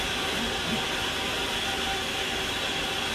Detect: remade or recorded remade